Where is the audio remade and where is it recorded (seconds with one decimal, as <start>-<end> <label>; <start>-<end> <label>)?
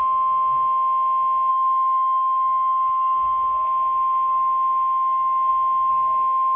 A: 0.0-1.5 recorded; 1.5-5.5 remade; 5.5-5.9 recorded; 5.9-6.6 remade